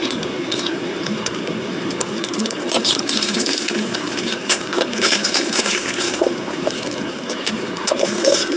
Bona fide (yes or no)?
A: no